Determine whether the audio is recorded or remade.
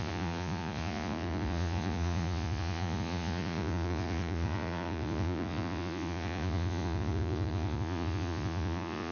remade